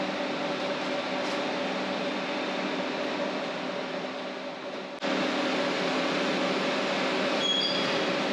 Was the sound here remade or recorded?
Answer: recorded